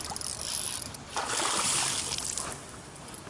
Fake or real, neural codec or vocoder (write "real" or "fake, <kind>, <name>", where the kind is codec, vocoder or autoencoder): real